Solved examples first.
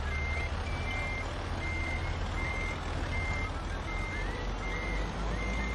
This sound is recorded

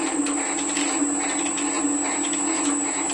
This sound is recorded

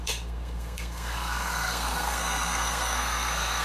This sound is remade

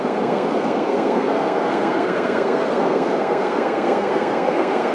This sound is remade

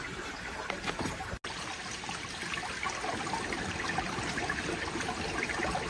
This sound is recorded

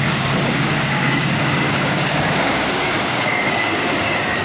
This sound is remade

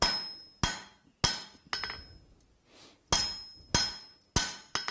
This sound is recorded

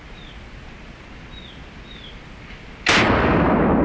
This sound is recorded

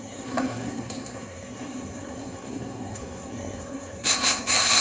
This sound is remade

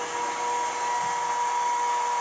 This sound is recorded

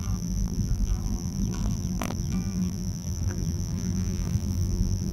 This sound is remade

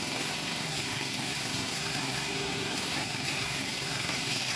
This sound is remade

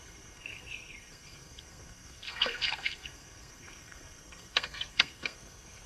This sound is remade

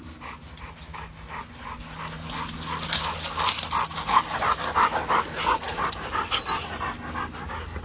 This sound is recorded